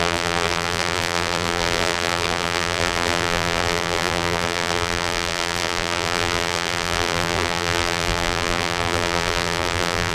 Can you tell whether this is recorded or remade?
remade